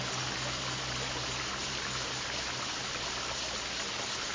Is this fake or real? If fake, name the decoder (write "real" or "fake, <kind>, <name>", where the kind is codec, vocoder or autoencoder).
real